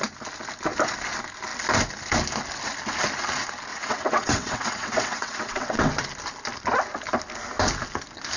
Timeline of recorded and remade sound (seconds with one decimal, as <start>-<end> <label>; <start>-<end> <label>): 0.0-3.7 recorded; 3.7-5.9 remade; 5.9-8.4 recorded